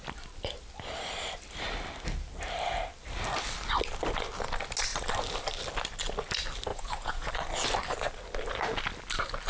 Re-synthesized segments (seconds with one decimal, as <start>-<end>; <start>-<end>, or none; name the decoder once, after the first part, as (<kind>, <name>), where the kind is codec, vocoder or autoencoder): 6.7-7.3 (vocoder, Vocos)